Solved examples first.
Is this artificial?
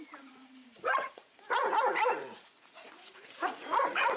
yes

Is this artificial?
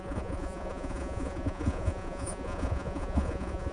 yes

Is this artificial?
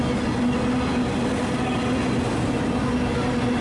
no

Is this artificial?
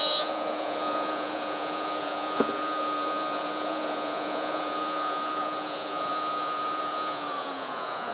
yes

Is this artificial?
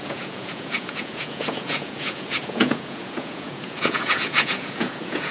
yes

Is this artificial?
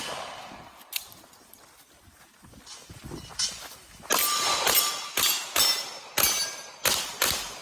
no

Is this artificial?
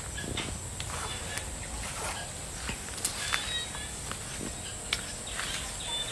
no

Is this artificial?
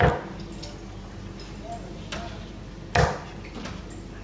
no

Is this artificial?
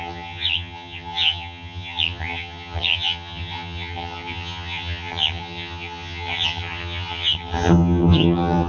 yes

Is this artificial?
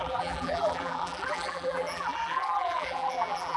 yes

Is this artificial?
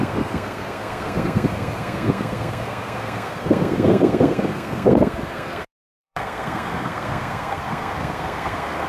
yes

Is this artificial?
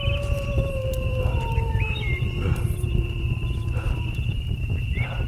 yes